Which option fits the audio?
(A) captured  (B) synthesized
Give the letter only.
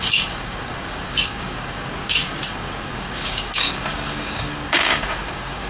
B